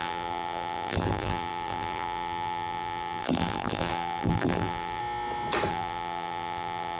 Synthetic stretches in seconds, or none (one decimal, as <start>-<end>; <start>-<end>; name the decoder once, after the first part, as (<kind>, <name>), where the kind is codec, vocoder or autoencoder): 0.0-5.0 (vocoder, BigVGAN v2); 5.7-7.0